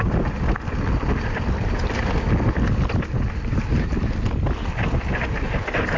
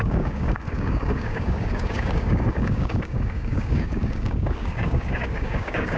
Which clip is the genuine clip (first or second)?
first